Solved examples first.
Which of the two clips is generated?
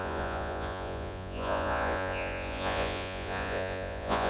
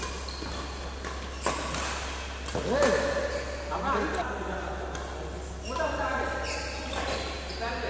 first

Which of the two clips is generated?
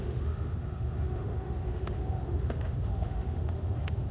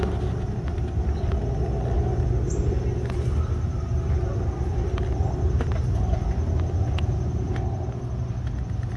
first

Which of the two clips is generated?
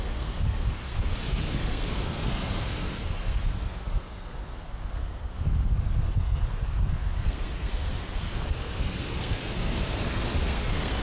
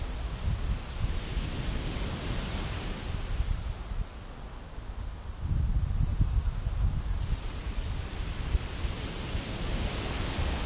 first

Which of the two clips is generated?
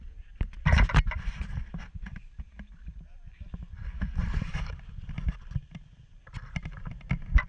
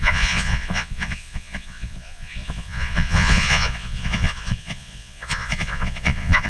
second